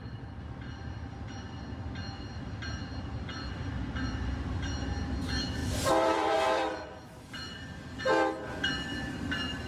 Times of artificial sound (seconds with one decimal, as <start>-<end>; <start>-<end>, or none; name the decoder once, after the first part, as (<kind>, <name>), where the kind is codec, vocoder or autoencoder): 5.6-8.0 (vocoder, BigVGAN v2)